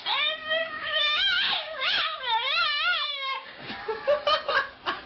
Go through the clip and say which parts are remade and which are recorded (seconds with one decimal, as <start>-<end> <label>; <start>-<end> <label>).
0.0-0.6 recorded; 0.6-3.7 remade; 3.7-5.1 recorded